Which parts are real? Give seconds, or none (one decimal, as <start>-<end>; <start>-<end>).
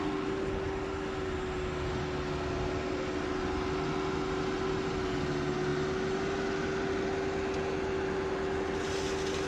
0.0-9.5